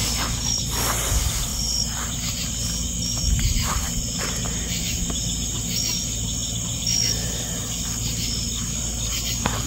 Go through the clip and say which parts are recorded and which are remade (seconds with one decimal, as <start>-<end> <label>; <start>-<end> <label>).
0.0-1.5 recorded; 1.5-4.0 remade; 4.0-9.7 recorded